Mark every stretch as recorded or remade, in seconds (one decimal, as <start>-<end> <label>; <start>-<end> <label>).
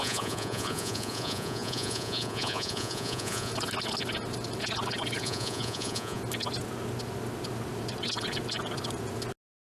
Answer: 0.0-3.5 remade; 3.5-5.2 recorded; 5.2-6.2 remade; 6.2-9.6 recorded